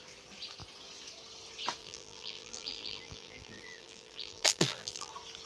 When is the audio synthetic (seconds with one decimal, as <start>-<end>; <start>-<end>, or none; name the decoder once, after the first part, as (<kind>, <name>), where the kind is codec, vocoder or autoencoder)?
1.8-5.1 (vocoder, BigVGAN v2)

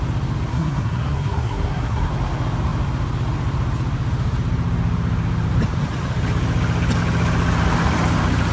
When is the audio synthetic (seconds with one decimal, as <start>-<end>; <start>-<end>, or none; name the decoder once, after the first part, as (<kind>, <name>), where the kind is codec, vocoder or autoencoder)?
0.5-2.1 (codec, SNAC)

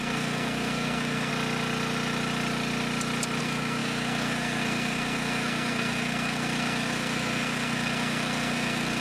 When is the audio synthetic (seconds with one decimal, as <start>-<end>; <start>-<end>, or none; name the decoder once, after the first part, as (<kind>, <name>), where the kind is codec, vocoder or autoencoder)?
0.0-1.3 (codec, SNAC); 3.4-9.0

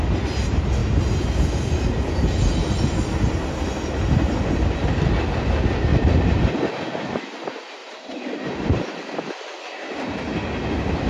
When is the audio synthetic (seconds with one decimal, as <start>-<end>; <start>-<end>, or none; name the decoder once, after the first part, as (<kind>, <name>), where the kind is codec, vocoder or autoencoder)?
5.9-6.7 (vocoder, BigVGAN v2); 7.8-8.9

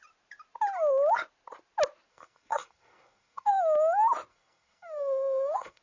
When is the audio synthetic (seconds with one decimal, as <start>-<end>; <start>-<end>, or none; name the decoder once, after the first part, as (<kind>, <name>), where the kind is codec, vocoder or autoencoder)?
2.1-3.5 (codec, SNAC); 4.3-5.8

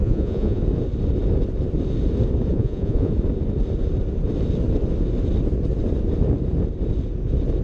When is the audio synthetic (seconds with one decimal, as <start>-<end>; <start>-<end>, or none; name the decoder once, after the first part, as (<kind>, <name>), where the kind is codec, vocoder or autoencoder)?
0.0-0.6 (vocoder, Vocos); 2.5-3.1

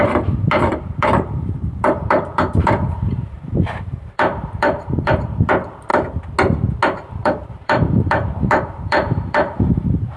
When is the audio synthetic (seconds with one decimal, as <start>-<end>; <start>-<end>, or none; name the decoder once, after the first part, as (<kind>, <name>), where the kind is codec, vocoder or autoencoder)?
0.0-5.9 (vocoder, BigVGAN v2); 7.1-10.2

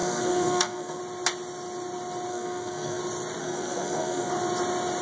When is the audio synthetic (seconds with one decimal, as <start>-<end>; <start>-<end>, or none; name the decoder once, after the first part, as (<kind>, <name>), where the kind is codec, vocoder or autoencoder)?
0.0-1.0 (codec, SNAC); 2.3-3.0; 3.4-4.3